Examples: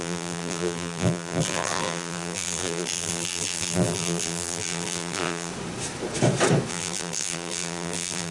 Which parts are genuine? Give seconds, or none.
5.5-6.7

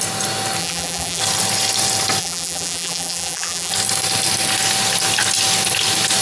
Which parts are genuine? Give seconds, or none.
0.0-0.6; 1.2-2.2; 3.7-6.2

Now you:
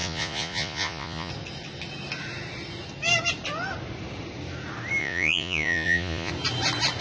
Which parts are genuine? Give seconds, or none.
1.3-5.0; 6.3-7.0